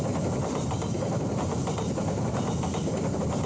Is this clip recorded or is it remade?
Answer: recorded